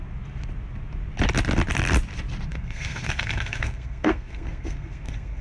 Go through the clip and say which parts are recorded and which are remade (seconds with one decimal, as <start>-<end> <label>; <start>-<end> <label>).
0.0-2.5 recorded; 2.5-5.4 remade